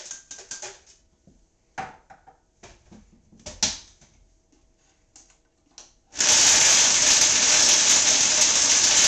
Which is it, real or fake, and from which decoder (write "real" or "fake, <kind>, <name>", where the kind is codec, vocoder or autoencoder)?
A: real